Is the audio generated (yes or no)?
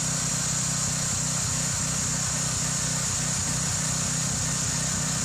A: no